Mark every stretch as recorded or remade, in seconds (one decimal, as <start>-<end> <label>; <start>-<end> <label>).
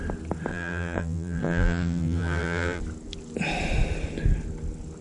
0.0-0.5 recorded; 0.5-2.8 remade; 2.8-5.0 recorded